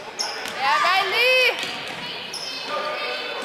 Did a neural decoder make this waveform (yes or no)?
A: no